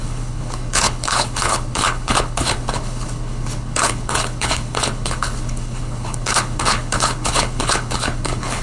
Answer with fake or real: fake